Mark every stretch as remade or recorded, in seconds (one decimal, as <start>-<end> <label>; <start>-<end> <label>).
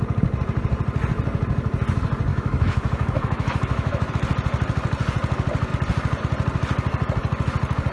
0.0-2.3 recorded; 2.3-4.1 remade; 4.1-7.9 recorded